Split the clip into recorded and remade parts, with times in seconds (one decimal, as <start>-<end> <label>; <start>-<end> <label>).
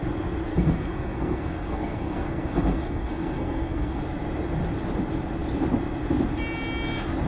0.0-0.5 recorded; 0.5-4.0 remade; 4.0-7.3 recorded